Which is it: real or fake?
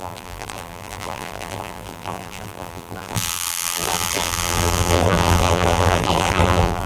fake